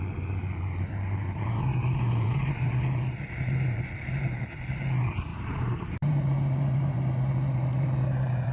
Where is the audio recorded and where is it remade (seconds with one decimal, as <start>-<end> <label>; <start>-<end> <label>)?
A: 0.0-5.3 recorded; 5.3-7.3 remade; 7.3-8.5 recorded